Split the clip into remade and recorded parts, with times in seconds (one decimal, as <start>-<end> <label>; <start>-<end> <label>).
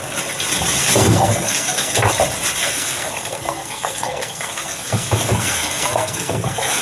0.0-0.8 recorded; 0.8-2.1 remade; 2.1-2.6 recorded; 2.6-6.8 remade